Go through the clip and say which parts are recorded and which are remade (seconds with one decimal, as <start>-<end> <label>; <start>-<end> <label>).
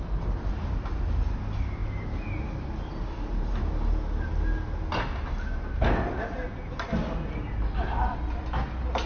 0.0-9.1 recorded